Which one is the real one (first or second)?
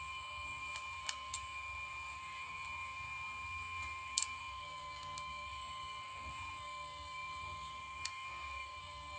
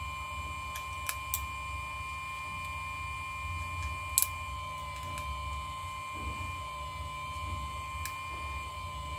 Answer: second